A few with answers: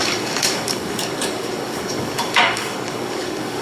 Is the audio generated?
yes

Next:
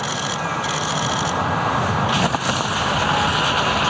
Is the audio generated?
no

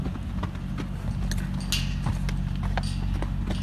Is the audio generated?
no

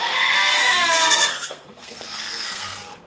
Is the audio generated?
yes